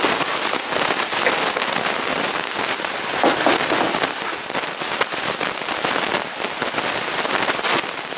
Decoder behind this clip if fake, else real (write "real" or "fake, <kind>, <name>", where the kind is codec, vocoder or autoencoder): real